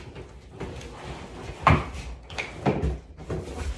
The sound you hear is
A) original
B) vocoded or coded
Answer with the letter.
A